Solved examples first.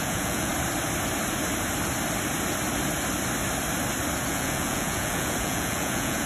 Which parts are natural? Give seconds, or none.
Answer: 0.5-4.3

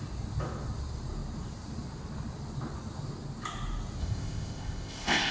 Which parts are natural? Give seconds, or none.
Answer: 0.0-4.0